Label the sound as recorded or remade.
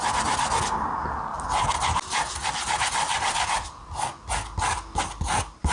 recorded